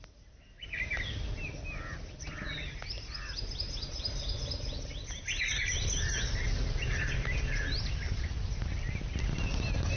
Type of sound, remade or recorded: recorded